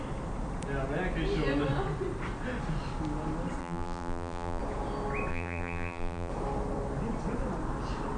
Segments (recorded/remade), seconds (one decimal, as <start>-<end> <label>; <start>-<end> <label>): 0.0-3.6 recorded; 3.6-4.6 remade; 4.6-5.3 recorded; 5.3-6.3 remade; 6.3-8.2 recorded

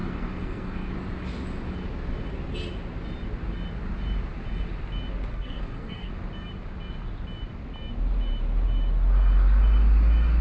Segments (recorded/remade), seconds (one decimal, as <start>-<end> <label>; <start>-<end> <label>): 0.0-0.9 remade; 0.9-5.3 recorded; 5.3-6.1 remade; 6.1-10.4 recorded

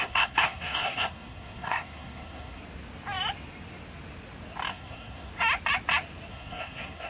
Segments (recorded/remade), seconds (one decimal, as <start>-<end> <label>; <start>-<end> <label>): 0.0-2.6 remade; 2.6-4.7 recorded; 4.7-5.3 remade; 5.3-6.3 recorded; 6.3-7.1 remade

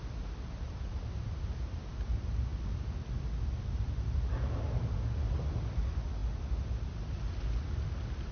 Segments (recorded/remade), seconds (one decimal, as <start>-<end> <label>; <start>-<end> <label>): 0.0-8.3 recorded

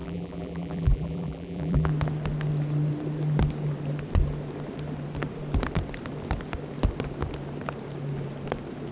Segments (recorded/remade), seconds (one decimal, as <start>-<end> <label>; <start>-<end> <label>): 0.0-1.9 remade; 1.9-8.9 recorded

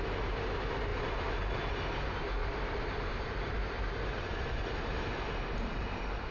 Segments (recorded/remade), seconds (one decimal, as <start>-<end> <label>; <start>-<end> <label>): 0.0-0.9 recorded; 0.9-1.7 remade; 1.7-2.4 recorded; 2.4-6.3 remade